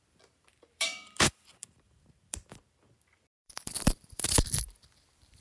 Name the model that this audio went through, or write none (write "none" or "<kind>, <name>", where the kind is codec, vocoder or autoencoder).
vocoder, BigVGAN v2